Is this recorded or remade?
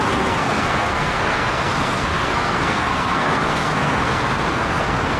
remade